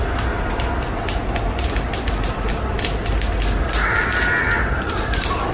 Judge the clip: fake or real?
real